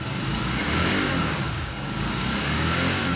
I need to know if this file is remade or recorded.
remade